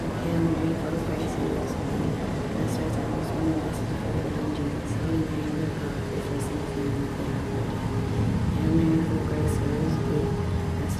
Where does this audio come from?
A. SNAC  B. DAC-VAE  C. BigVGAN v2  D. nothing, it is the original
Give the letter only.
D